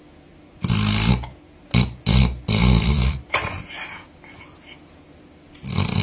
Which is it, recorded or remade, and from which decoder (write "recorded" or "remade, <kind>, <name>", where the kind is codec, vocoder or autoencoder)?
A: recorded